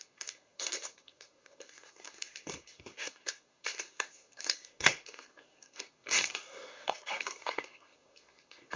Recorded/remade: remade